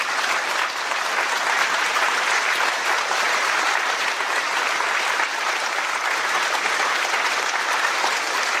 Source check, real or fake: real